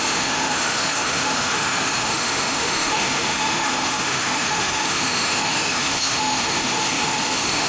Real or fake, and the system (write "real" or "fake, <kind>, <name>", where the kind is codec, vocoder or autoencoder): fake, autoencoder, DAC-VAE